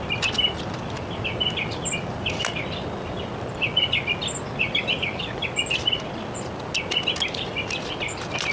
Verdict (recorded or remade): recorded